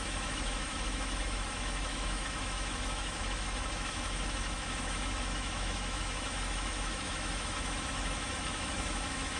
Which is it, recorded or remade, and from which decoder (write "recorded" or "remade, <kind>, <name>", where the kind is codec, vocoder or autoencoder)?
remade, autoencoder, DAC-VAE